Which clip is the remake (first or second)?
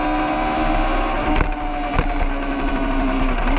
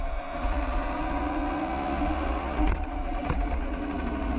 second